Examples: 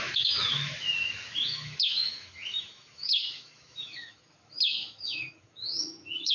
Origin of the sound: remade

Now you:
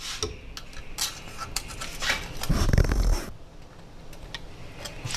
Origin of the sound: recorded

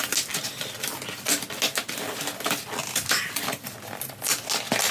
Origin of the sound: recorded